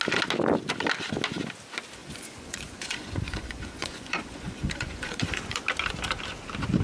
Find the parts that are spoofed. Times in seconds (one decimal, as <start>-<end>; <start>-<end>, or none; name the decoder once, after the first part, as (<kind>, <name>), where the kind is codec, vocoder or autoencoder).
2.0-5.6 (vocoder, Vocos)